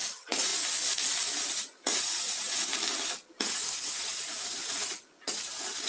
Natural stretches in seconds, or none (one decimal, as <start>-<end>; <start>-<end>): 0.5-1.5; 2.7-3.5